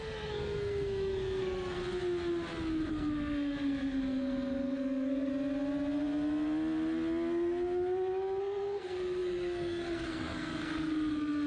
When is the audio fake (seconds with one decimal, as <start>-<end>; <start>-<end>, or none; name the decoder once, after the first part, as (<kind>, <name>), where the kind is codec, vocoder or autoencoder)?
0.0-1.8 (codec, SNAC); 2.9-5.3; 8.4-11.5